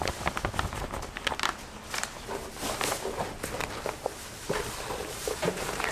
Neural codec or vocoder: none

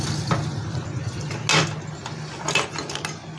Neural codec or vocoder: none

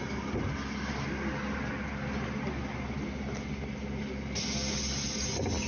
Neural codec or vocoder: none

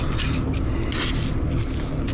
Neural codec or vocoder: none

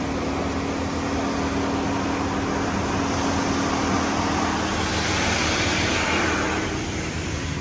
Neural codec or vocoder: none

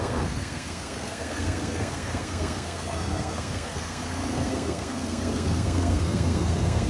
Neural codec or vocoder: codec, SNAC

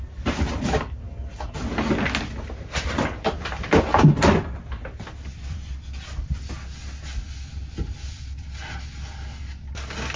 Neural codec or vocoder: none